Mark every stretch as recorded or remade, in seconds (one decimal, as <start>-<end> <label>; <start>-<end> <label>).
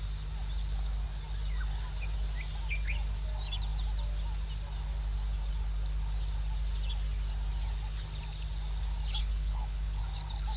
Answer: 0.0-9.2 recorded; 9.2-10.0 remade; 10.0-10.6 recorded